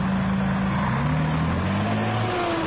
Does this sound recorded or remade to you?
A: recorded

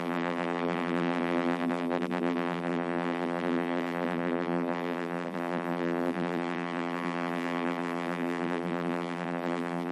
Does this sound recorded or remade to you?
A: remade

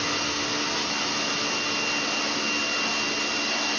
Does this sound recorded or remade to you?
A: recorded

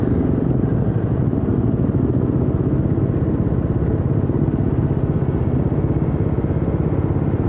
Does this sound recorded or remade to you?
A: recorded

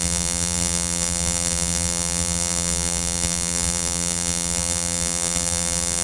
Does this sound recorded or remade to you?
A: remade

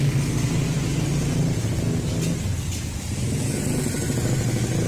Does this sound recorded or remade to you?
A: recorded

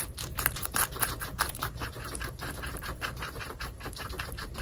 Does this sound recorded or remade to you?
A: remade